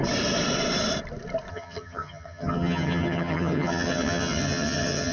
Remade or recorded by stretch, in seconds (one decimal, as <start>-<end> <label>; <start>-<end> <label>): 0.0-1.5 recorded; 1.5-5.1 remade